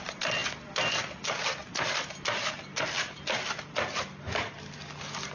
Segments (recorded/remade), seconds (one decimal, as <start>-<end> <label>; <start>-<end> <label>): 0.0-5.3 recorded